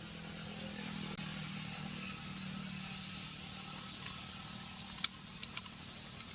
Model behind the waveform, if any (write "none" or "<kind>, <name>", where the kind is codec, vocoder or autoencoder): none